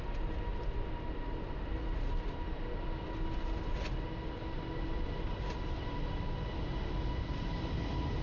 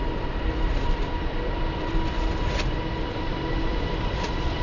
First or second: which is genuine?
first